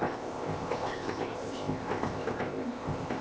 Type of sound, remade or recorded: remade